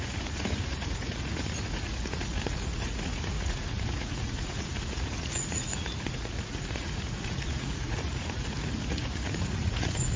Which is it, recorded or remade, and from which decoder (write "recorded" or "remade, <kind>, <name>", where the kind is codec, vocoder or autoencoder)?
remade, vocoder, Vocos